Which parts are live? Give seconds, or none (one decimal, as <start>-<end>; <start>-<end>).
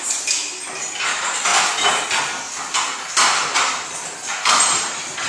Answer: 1.5-4.7